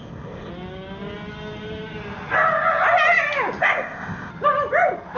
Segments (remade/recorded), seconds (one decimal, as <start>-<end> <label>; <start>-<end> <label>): 0.0-0.5 remade; 0.5-3.6 recorded; 3.6-4.3 remade; 4.3-5.2 recorded